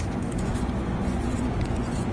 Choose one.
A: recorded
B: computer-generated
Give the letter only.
B